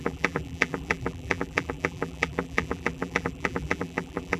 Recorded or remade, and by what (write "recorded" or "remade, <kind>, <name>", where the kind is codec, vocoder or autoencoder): remade, vocoder, BigVGAN v2